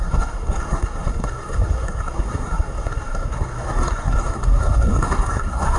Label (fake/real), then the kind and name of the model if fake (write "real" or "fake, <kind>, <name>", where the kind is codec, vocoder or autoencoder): fake, codec, SNAC